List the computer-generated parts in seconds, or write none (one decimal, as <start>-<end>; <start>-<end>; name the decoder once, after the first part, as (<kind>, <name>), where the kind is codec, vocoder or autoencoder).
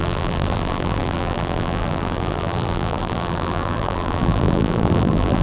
0.0-5.4 (vocoder, BigVGAN v2)